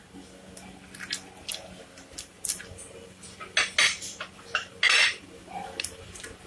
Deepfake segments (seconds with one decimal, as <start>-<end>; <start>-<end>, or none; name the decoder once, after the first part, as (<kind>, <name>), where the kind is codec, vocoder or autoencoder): none